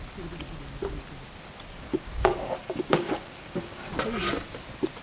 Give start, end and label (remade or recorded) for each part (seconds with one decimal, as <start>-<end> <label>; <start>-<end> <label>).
0.0-2.1 recorded; 2.1-3.8 remade; 3.8-5.0 recorded